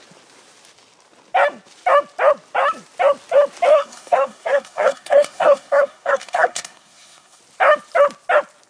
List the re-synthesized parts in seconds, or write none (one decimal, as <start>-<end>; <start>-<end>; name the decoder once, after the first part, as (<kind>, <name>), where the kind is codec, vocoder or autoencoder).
3.7-7.4 (codec, SNAC)